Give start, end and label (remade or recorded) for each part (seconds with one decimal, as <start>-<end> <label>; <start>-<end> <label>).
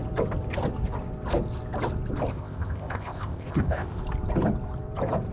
0.0-2.3 recorded; 2.3-4.0 remade; 4.0-5.3 recorded